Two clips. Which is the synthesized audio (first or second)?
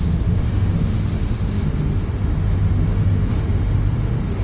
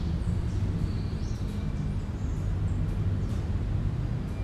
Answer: first